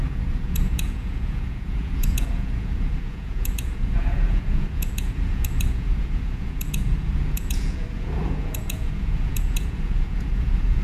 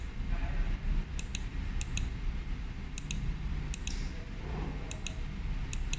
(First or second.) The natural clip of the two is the second